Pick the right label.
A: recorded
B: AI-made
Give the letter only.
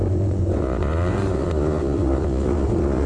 B